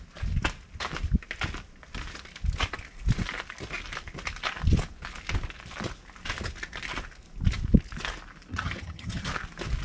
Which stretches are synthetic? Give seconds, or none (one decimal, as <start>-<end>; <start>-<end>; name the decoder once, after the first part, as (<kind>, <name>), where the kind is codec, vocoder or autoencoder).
8.5-9.3 (vocoder, HiFi-GAN)